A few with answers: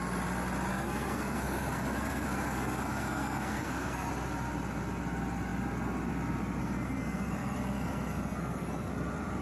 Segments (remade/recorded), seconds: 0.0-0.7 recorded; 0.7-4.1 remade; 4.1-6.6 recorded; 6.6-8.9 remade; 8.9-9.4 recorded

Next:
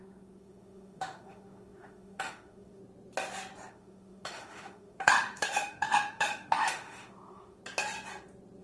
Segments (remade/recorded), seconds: 0.0-2.8 remade; 2.8-3.7 recorded; 3.7-7.6 remade; 7.6-8.6 recorded

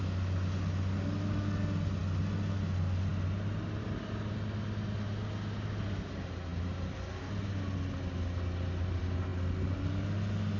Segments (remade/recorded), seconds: 0.0-10.6 recorded

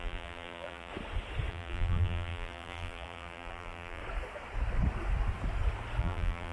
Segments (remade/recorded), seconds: 0.0-0.9 remade; 0.9-1.5 recorded; 1.5-4.0 remade; 4.0-6.0 recorded; 6.0-6.5 remade

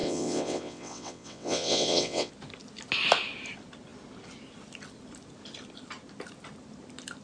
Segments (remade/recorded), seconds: 0.0-2.3 remade; 2.3-7.2 recorded